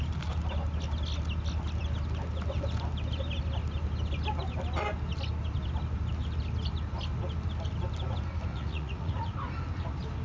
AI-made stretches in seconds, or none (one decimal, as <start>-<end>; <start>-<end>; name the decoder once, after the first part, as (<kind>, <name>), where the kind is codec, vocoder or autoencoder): 8.5-9.4 (vocoder, Vocos)